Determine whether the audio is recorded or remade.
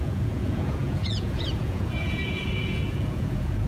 remade